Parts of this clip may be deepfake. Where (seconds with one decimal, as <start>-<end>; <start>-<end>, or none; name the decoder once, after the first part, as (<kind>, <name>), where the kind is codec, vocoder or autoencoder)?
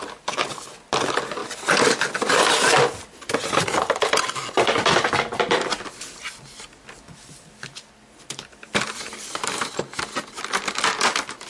none